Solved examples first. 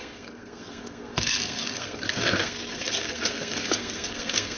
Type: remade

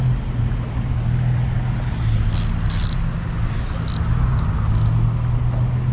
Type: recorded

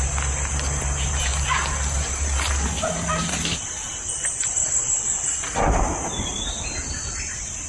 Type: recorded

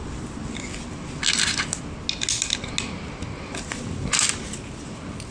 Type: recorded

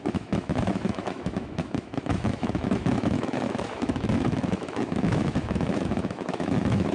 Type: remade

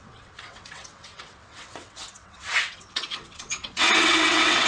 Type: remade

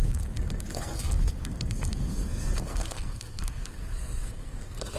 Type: remade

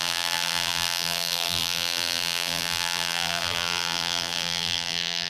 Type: remade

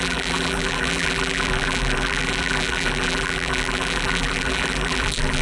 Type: remade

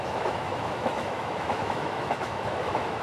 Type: remade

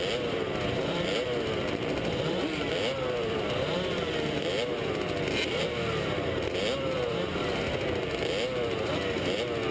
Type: remade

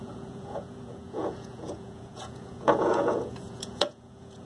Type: remade